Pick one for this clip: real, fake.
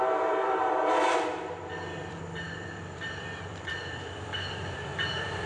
fake